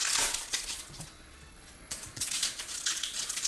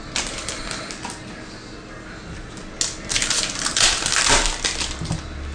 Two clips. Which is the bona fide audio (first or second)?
second